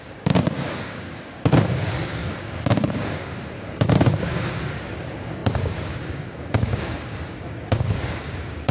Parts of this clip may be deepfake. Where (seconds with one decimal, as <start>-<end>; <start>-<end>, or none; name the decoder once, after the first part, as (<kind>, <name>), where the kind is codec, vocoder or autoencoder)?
0.0-8.7 (codec, DAC)